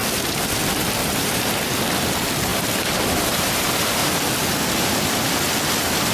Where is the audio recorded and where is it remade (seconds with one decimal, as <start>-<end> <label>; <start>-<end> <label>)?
0.0-1.0 recorded; 1.0-1.5 remade; 1.5-6.1 recorded